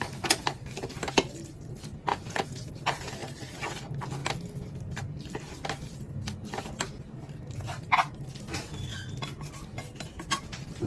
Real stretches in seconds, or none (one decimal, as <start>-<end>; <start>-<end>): 0.0-2.1; 2.7-10.9